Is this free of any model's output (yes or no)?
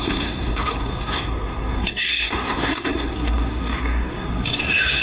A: no